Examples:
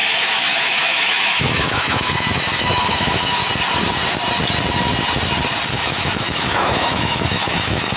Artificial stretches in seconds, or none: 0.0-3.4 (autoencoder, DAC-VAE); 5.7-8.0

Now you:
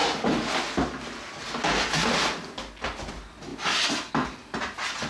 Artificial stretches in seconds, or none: none

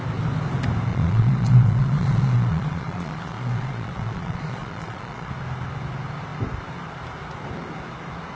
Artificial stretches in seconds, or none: 0.9-5.3 (vocoder, Vocos)